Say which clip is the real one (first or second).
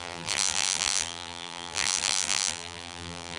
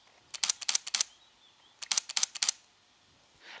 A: second